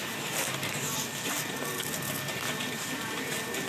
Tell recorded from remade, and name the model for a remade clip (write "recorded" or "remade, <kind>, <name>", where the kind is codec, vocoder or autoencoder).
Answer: recorded